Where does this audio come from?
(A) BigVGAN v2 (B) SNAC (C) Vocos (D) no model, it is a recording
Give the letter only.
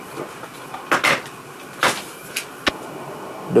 D